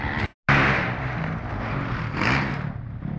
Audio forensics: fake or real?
real